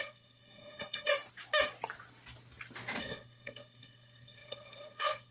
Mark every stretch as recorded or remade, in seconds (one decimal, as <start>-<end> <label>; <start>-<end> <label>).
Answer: 0.0-1.1 remade; 1.1-3.0 recorded; 3.0-5.3 remade